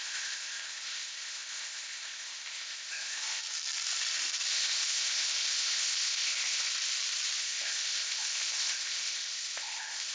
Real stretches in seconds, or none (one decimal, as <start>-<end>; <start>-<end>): 3.4-4.5; 6.6-7.4